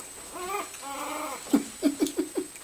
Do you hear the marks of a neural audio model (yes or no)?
no